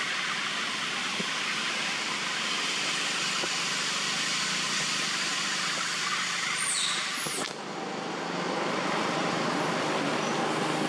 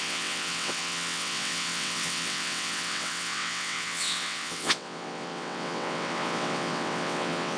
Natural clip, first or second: first